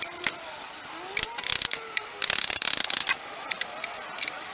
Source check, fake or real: real